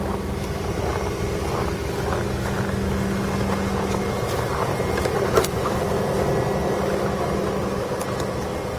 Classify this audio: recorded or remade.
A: recorded